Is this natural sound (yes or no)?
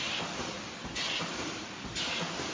yes